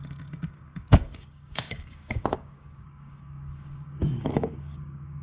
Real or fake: fake